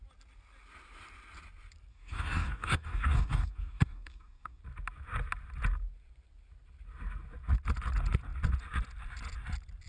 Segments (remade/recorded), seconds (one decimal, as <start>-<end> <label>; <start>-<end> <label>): 0.0-1.9 recorded; 1.9-4.6 remade; 4.6-9.9 recorded